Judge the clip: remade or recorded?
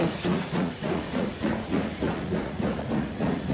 remade